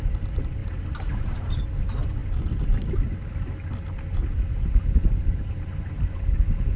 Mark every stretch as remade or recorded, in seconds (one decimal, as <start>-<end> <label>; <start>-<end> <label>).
0.0-0.6 recorded; 0.6-1.6 remade; 1.6-6.8 recorded